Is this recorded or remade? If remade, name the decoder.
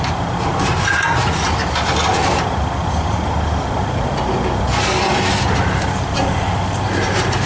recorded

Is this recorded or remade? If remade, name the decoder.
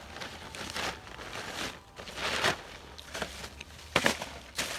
recorded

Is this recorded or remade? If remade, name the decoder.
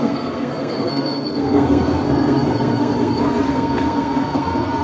remade, codec, SNAC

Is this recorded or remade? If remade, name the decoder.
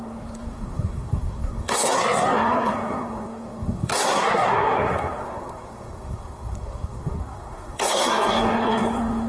remade, codec, SNAC